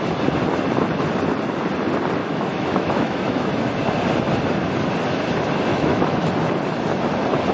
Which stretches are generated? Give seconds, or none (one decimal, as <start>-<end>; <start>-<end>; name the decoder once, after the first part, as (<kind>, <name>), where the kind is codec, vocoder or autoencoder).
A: 2.2-3.5 (autoencoder, DAC-VAE); 5.7-6.3